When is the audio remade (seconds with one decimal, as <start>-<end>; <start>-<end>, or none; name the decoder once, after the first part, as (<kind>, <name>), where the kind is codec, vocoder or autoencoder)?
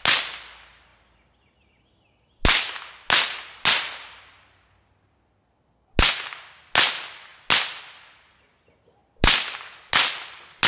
none